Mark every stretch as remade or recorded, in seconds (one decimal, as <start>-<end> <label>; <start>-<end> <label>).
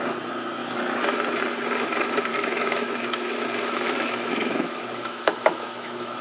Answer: 0.0-0.6 recorded; 0.6-1.2 remade; 1.2-2.3 recorded; 2.3-6.2 remade